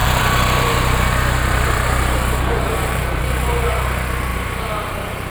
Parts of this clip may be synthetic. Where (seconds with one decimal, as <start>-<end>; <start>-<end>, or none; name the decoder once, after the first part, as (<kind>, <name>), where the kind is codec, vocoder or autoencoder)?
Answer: 0.0-3.2 (vocoder, BigVGAN v2); 4.3-5.3